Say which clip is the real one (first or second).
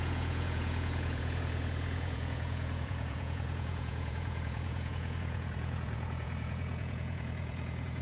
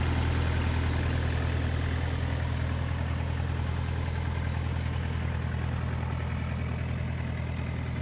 second